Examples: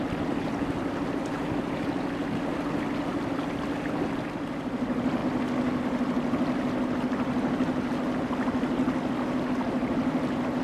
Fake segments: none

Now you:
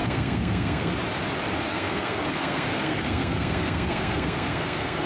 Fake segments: 0.0-0.9 (codec, SNAC); 1.7-5.1

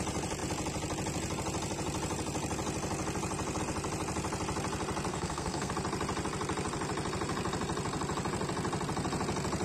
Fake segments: 5.1-5.7 (codec, SNAC)

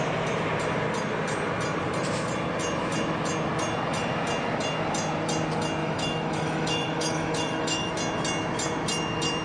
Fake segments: 5.8-7.9 (autoencoder, DAC-VAE)

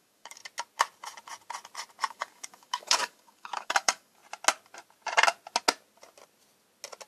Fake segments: 0.0-0.4 (codec, DAC); 2.1-4.2

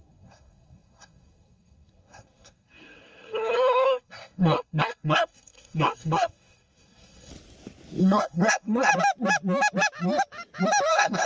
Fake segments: 0.0-7.3 (codec, SNAC); 8.0-8.9; 10.9-11.3

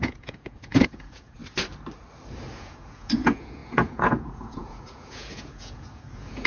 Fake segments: 0.0-1.4 (vocoder, Vocos); 2.5-6.5

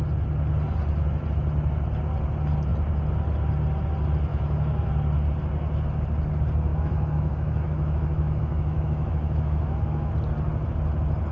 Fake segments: 4.3-4.9 (autoencoder, DAC-VAE); 6.7-10.1